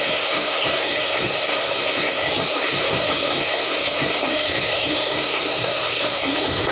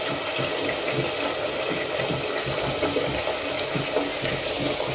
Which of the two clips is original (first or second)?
second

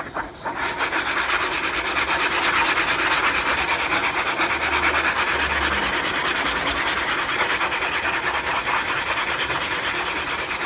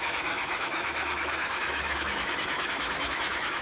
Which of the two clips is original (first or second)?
first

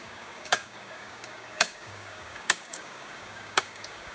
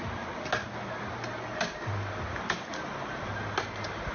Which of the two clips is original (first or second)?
second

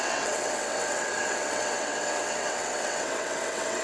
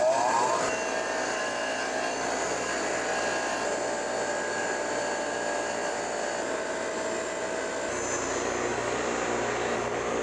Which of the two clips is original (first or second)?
second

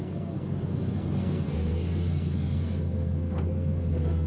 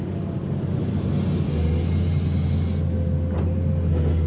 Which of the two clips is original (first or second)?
second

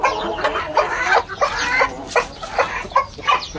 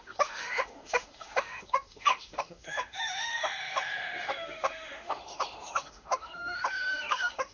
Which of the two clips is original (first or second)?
first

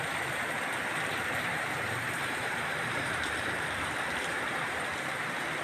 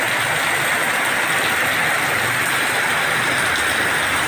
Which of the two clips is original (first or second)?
second